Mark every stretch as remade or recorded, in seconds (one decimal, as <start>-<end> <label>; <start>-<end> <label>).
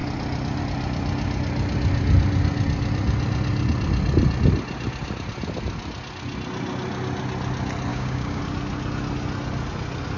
0.0-7.9 recorded; 7.9-8.4 remade; 8.4-10.2 recorded